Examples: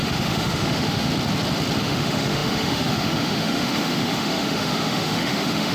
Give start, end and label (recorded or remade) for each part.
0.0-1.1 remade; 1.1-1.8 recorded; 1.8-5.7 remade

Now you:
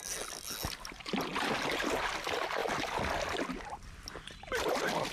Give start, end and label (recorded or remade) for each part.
0.0-5.1 recorded

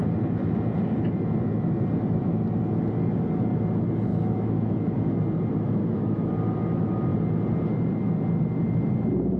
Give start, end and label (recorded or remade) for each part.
0.0-4.1 recorded; 4.1-5.1 remade; 5.1-5.8 recorded; 5.8-6.3 remade; 6.3-9.4 recorded